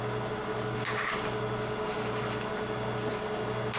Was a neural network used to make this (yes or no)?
no